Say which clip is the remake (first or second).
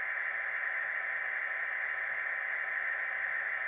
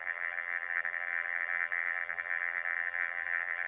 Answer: second